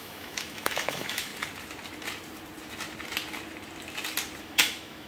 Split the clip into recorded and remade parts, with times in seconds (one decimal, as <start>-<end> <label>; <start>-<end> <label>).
0.0-1.3 remade; 1.3-4.4 recorded; 4.4-5.1 remade

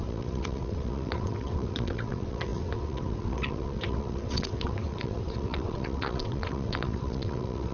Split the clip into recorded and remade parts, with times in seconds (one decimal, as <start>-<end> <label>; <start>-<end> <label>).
0.0-7.7 remade

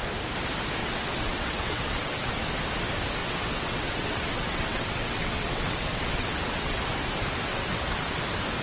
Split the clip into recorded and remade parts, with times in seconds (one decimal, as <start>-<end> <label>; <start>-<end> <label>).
0.0-0.8 recorded; 0.8-2.3 remade; 2.3-3.2 recorded; 3.2-6.8 remade; 6.8-7.5 recorded; 7.5-8.2 remade; 8.2-8.6 recorded

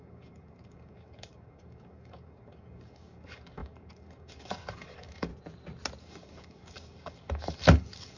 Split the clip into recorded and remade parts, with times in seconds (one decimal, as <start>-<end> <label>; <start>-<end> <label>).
0.0-5.3 remade; 5.3-6.0 recorded; 6.0-8.2 remade

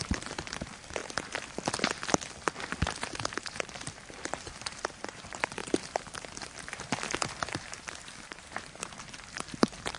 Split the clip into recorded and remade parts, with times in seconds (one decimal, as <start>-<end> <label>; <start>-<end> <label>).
0.0-1.0 remade; 1.0-3.4 recorded; 3.4-10.0 remade

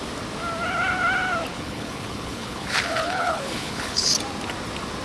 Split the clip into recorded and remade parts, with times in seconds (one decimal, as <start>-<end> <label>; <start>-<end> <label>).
0.0-1.5 recorded; 1.5-4.1 remade; 4.1-5.0 recorded

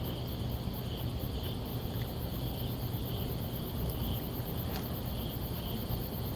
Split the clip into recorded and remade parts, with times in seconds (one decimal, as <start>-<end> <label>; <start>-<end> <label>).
0.0-1.7 recorded; 1.7-4.2 remade; 4.2-6.4 recorded

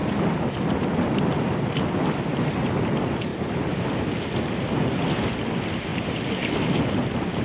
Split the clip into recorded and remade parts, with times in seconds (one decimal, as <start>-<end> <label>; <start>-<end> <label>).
0.0-7.4 recorded